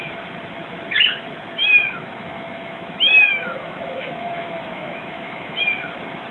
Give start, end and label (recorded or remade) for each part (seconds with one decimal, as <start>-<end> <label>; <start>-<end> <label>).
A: 0.0-1.8 recorded; 1.8-5.6 remade; 5.6-6.3 recorded